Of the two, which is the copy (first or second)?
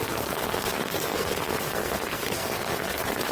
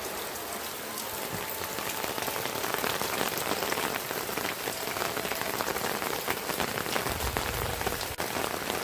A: first